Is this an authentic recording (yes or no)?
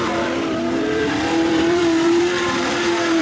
no